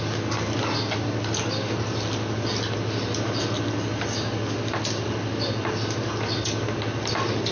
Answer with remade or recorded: recorded